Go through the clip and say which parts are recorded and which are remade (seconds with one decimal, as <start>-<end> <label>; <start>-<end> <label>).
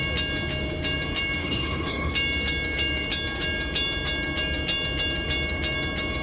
0.0-1.4 recorded; 1.4-2.1 remade; 2.1-6.2 recorded